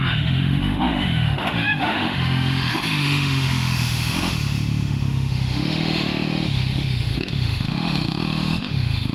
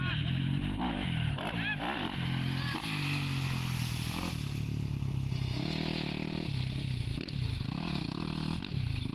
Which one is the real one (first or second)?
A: second